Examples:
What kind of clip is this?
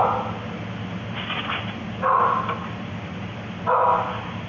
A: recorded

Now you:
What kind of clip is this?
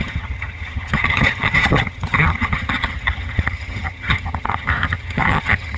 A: remade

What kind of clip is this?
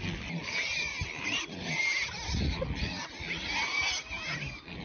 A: recorded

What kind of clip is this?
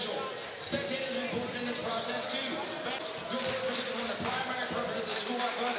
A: recorded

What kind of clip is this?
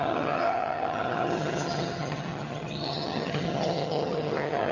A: remade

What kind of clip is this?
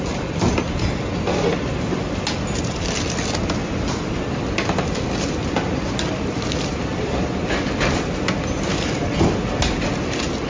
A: recorded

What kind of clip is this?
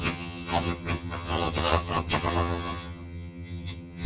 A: remade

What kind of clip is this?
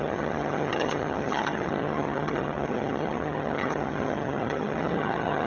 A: remade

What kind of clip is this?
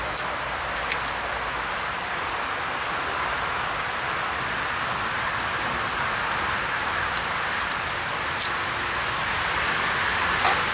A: recorded